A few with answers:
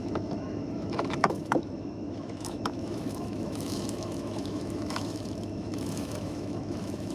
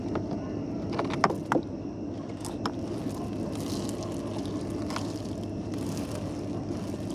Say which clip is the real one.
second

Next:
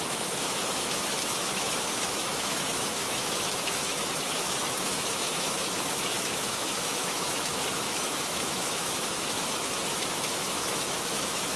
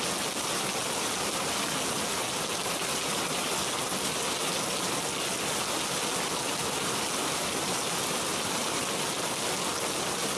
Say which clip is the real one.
second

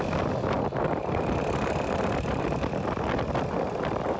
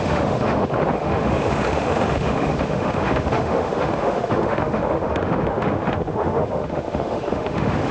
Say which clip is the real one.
first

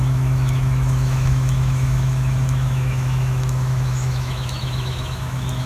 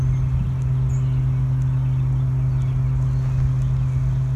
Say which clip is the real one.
second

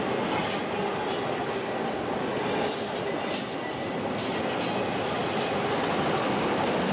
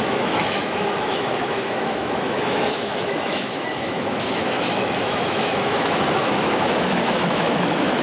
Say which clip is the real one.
first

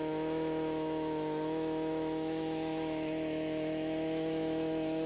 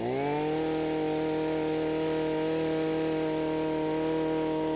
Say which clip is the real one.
second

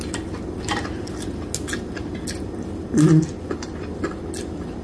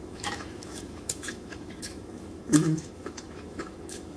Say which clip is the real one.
first